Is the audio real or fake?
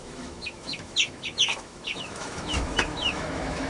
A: fake